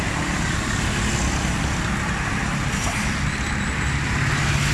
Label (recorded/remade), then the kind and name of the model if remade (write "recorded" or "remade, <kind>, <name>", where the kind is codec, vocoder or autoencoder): recorded